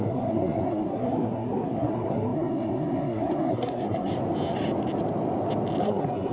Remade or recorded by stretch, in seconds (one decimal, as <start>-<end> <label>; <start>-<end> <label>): 0.0-4.1 remade; 4.1-5.8 recorded; 5.8-6.3 remade